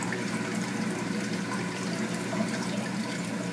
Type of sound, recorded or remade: remade